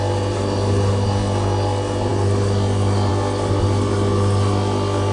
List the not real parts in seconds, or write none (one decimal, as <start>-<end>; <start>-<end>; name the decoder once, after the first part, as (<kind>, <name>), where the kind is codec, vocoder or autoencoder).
none